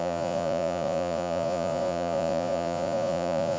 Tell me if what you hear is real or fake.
fake